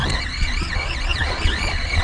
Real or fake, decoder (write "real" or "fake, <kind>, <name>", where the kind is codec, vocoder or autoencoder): fake, vocoder, Vocos